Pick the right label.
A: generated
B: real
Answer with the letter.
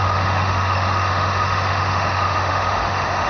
A